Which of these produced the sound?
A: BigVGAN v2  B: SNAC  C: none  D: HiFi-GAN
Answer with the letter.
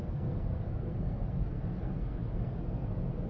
B